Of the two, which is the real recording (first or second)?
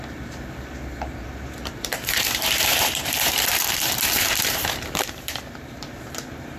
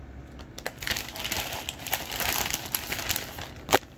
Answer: second